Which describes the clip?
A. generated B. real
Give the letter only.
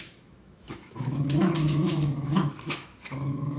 A